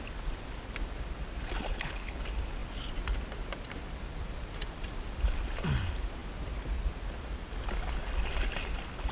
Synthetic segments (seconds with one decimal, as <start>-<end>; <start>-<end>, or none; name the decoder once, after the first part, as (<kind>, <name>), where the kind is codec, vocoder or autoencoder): 1.7-2.2 (codec, HILCodec)